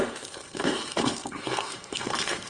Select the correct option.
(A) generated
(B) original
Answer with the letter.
A